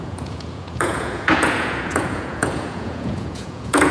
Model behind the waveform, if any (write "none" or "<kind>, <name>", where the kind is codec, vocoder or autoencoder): vocoder, Vocos